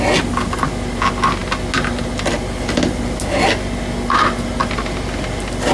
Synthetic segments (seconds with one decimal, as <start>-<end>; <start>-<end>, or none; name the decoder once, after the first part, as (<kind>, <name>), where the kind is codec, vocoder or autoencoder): none